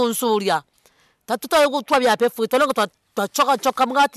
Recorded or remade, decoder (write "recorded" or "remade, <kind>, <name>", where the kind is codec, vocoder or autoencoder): recorded